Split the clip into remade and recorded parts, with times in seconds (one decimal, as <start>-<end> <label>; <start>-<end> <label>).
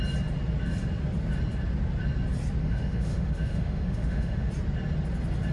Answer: 0.0-2.6 recorded; 2.6-4.5 remade; 4.5-5.5 recorded